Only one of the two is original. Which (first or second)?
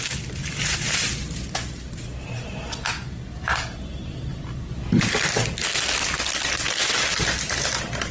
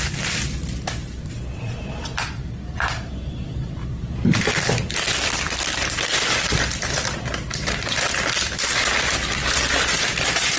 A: first